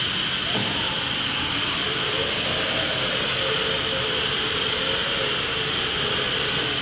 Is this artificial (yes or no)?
no